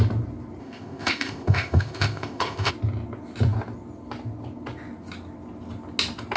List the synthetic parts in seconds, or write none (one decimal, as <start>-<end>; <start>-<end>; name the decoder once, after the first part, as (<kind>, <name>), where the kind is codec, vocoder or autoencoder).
0.6-2.7 (codec, ZipCodec)